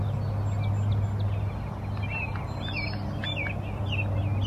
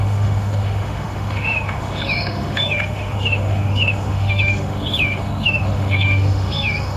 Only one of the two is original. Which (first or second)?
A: first